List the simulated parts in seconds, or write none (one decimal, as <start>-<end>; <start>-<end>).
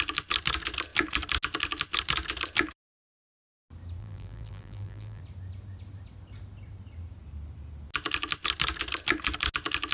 4.0-5.2